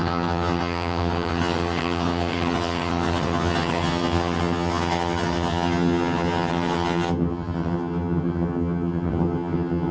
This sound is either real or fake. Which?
fake